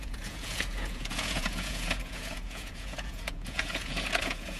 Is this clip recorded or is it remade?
remade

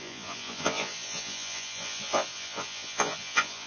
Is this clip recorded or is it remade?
remade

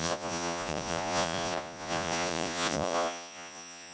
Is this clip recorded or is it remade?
remade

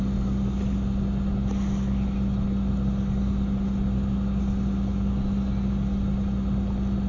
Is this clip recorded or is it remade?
recorded